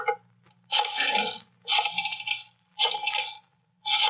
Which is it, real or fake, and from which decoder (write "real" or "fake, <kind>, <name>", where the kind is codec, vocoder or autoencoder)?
real